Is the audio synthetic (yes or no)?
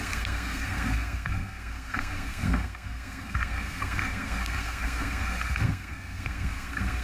yes